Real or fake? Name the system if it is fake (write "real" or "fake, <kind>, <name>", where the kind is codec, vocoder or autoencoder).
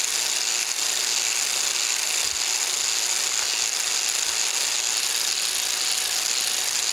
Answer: real